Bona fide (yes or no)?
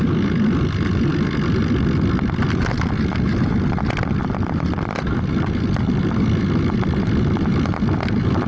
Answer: yes